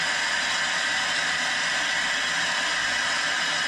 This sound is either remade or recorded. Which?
recorded